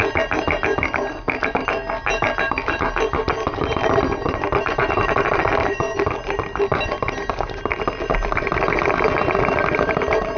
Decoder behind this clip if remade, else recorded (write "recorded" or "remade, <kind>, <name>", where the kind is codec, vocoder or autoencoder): recorded